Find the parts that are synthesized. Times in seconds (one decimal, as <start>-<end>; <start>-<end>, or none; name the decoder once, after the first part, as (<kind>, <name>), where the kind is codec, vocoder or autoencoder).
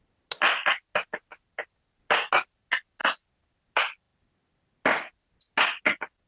none